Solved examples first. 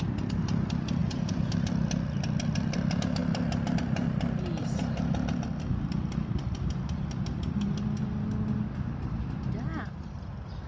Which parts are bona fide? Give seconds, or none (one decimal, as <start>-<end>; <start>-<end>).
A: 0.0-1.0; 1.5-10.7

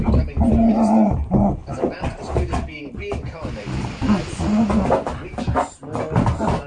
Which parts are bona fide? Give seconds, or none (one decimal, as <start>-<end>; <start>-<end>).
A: 0.0-6.7

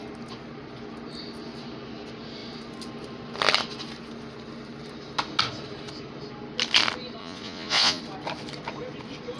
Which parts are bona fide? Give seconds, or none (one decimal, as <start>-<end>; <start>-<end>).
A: 0.0-7.2; 8.0-9.4